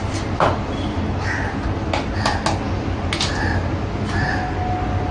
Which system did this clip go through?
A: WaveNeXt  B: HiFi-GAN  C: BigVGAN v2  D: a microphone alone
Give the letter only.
D